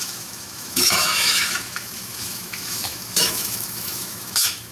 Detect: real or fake fake